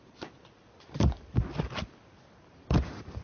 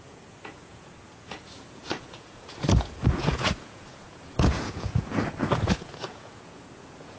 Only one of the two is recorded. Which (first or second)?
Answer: first